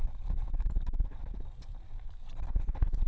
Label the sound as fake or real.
real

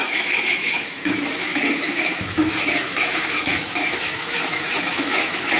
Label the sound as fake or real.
fake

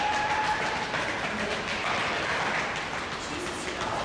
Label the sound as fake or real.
real